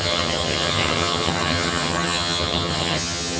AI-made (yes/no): yes